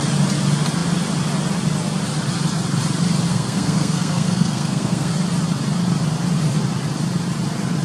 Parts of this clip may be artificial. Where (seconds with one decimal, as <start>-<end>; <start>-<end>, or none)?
3.3-5.1